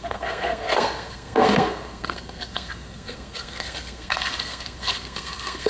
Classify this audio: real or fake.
fake